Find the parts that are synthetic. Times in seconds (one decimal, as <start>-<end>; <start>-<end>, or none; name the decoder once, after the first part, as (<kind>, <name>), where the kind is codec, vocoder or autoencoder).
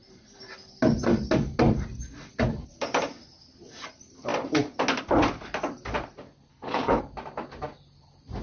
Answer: 6.5-7.0 (codec, HILCodec)